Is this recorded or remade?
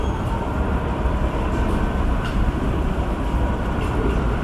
remade